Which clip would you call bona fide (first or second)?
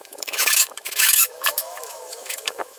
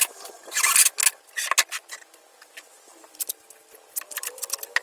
second